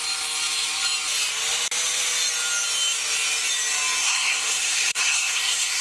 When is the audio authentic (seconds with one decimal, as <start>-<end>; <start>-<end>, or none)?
0.0-4.0